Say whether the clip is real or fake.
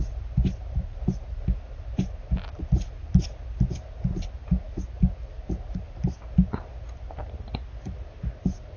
real